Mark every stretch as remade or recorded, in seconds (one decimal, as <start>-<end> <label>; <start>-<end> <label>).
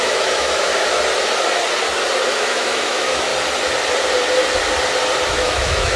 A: 0.0-0.7 remade; 0.7-2.3 recorded; 2.3-3.3 remade; 3.3-5.3 recorded; 5.3-6.0 remade